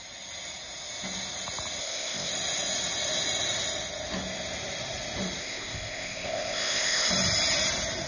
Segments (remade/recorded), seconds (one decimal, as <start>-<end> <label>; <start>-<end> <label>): 0.0-1.8 recorded; 1.8-2.3 remade; 2.3-5.4 recorded; 5.4-7.1 remade; 7.1-8.1 recorded